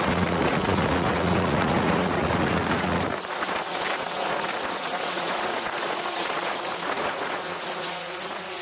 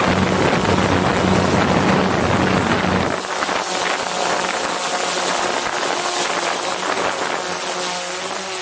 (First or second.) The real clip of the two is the second